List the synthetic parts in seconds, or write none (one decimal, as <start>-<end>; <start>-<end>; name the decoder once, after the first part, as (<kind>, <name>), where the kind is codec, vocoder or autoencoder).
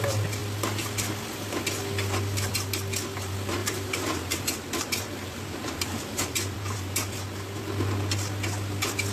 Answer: 3.6-7.2 (vocoder, BigVGAN v2)